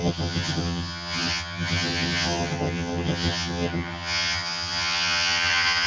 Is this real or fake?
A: fake